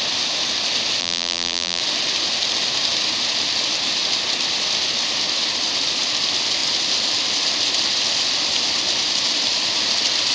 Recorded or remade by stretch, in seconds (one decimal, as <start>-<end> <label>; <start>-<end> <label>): 0.0-1.0 recorded; 1.0-1.8 remade; 1.8-10.3 recorded